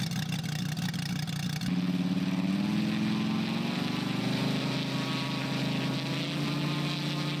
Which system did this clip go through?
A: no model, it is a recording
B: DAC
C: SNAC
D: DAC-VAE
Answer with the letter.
A